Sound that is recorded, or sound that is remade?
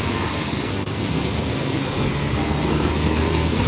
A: remade